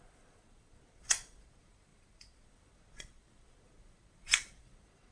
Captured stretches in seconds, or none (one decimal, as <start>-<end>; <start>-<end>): none